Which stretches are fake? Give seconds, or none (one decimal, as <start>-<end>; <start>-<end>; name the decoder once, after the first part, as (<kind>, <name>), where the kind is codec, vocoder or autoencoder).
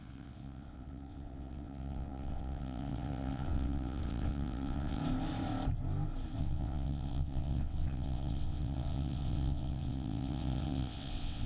0.0-5.0 (vocoder, WaveNeXt); 6.4-11.5